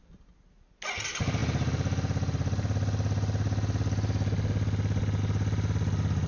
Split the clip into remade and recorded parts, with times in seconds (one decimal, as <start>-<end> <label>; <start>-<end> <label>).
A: 0.0-6.3 recorded